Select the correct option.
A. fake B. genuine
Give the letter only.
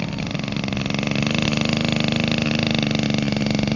B